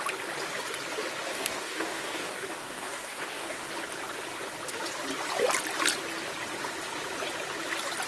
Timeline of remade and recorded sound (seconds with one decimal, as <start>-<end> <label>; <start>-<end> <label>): 0.0-1.3 recorded; 1.3-3.7 remade; 3.7-8.1 recorded